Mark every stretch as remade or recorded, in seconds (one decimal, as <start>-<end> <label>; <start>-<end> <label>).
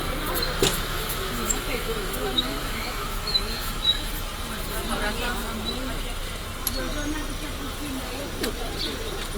0.0-0.7 recorded; 0.7-4.1 remade; 4.1-9.4 recorded